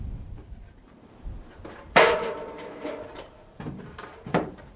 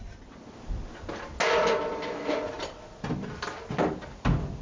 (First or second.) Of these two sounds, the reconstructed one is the first